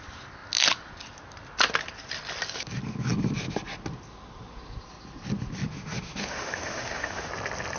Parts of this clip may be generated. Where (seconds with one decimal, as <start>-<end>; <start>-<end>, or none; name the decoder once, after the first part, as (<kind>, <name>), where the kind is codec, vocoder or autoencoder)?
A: 5.7-7.3 (autoencoder, DAC-VAE)